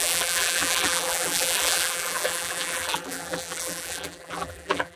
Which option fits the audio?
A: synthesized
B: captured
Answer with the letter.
A